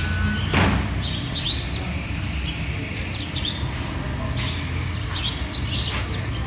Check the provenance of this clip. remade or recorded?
recorded